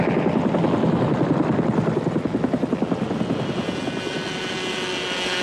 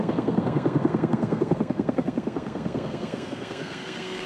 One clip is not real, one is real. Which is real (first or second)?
first